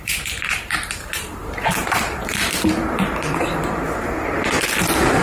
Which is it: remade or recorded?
remade